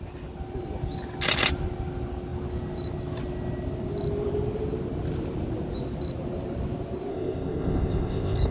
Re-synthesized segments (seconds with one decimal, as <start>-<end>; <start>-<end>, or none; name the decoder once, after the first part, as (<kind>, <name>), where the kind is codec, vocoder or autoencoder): 7.1-8.5 (codec, ZipCodec)

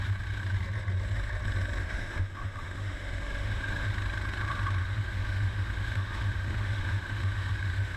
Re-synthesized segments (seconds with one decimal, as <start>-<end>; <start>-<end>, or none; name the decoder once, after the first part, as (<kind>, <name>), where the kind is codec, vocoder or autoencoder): 1.8-3.9 (autoencoder, DAC-VAE); 4.8-8.0

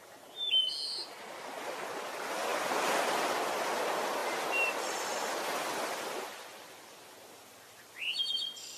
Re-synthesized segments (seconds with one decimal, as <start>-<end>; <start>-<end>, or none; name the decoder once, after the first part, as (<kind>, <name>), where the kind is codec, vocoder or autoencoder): none